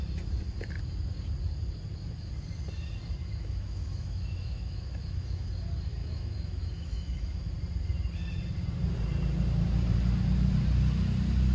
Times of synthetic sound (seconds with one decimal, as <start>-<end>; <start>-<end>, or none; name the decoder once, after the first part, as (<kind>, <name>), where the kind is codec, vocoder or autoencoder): 3.2-5.5 (autoencoder, DAC-VAE); 6.0-7.5